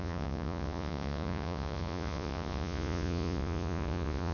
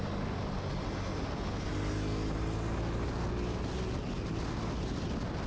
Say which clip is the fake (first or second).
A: first